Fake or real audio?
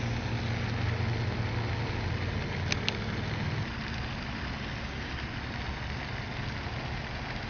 real